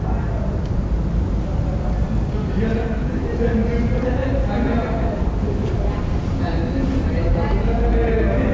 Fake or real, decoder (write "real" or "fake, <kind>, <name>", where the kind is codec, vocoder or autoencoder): real